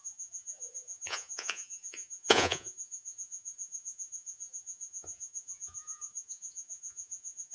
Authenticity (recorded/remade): remade